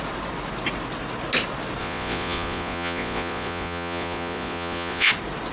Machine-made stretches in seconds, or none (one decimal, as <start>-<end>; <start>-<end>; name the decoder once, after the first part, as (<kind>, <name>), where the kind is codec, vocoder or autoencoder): 1.8-5.1 (vocoder, Vocos)